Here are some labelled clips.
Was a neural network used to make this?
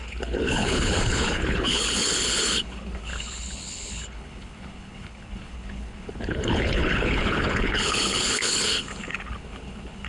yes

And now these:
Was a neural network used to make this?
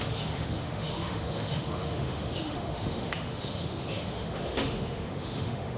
yes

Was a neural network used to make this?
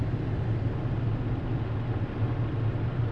no